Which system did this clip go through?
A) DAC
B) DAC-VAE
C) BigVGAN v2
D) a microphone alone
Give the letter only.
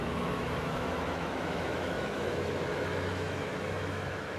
B